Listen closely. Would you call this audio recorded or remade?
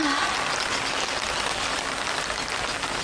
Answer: recorded